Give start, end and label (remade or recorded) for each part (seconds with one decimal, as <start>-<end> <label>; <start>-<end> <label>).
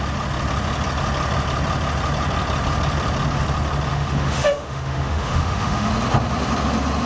0.0-3.9 recorded; 3.9-5.9 remade; 5.9-7.1 recorded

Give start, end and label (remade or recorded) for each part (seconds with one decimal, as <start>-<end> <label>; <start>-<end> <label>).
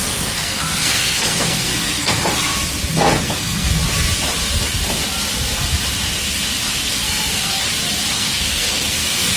0.0-2.5 remade; 2.5-3.2 recorded; 3.2-3.8 remade; 3.8-6.9 recorded; 6.9-7.5 remade; 7.5-8.1 recorded; 8.1-9.4 remade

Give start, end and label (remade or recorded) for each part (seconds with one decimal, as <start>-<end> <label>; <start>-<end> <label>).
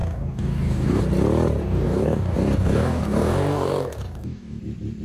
0.0-1.0 remade; 1.0-1.6 recorded; 1.6-4.6 remade; 4.6-5.0 recorded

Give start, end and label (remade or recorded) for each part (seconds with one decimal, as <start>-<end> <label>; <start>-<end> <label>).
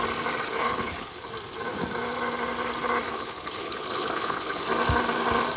0.0-0.5 recorded; 0.5-1.3 remade; 1.3-3.1 recorded; 3.1-4.6 remade; 4.6-5.6 recorded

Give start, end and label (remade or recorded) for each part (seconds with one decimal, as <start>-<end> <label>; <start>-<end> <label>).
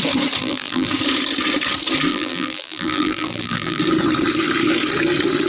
0.0-0.4 recorded; 0.4-0.9 remade; 0.9-2.1 recorded; 2.1-3.8 remade; 3.8-5.5 recorded